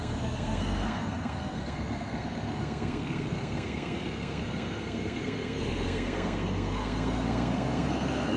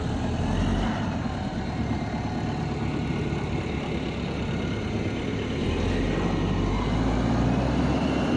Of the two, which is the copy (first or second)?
first